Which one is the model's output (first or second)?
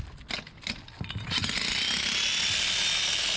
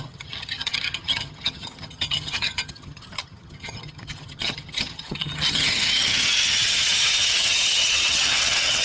second